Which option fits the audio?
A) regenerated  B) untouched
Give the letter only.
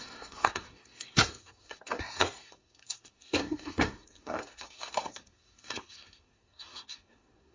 A